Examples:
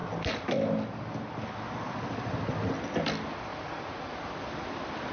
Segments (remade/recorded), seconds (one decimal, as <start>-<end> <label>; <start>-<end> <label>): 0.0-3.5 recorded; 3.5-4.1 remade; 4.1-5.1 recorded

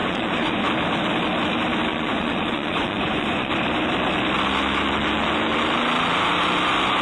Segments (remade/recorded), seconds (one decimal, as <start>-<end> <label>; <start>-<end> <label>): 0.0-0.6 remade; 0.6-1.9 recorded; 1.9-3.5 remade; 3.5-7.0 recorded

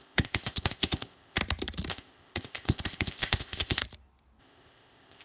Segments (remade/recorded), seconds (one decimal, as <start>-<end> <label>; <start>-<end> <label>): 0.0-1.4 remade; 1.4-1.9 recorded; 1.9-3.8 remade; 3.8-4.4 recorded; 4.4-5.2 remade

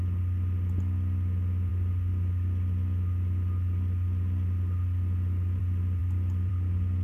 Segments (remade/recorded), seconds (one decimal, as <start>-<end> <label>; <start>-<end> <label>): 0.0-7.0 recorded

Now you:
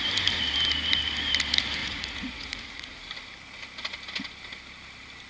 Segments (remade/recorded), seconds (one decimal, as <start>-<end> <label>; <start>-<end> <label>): 0.0-1.8 recorded; 1.8-3.1 remade; 3.1-5.3 recorded

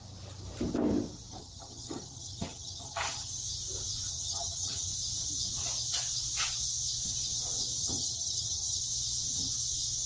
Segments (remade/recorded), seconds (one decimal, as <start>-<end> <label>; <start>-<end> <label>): 0.0-1.4 recorded; 1.4-3.3 remade; 3.3-4.1 recorded; 4.1-4.9 remade; 4.9-7.8 recorded; 7.8-8.8 remade; 8.8-10.1 recorded

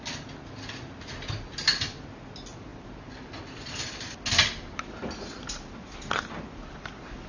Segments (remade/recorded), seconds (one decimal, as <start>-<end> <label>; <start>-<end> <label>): 0.0-7.3 recorded